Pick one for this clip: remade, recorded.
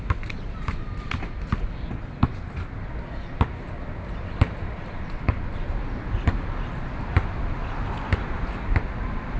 recorded